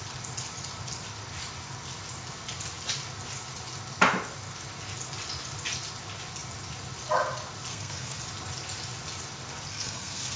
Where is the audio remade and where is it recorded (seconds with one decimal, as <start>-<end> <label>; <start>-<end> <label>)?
0.0-7.7 recorded; 7.7-8.2 remade; 8.2-9.7 recorded; 9.7-10.4 remade